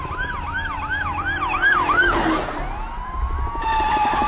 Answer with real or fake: real